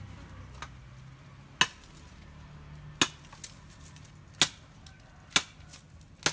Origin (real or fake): real